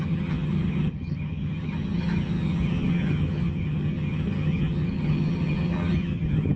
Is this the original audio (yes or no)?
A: no